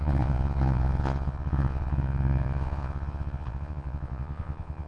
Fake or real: fake